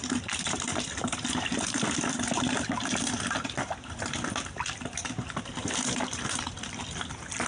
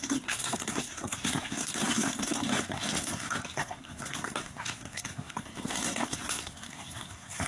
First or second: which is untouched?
first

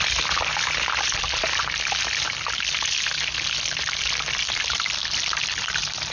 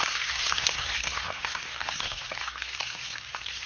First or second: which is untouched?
first